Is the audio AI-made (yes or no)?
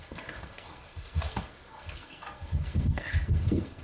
yes